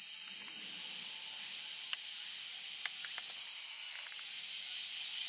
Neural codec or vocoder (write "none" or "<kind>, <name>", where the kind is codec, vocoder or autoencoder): none